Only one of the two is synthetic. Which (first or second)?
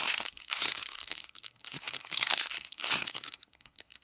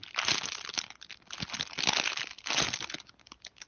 first